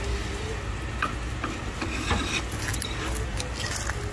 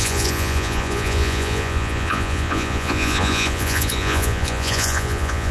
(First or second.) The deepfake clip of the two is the second